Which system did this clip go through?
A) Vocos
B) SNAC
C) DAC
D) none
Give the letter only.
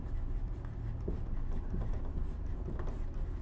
D